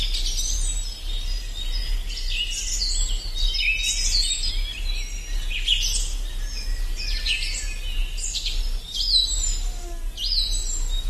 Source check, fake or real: real